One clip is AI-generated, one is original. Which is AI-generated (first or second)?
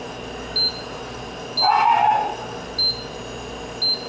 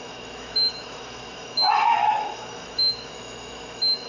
second